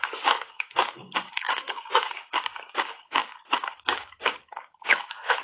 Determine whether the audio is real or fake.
fake